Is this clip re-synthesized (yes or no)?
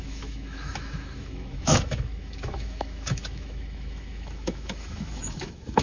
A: yes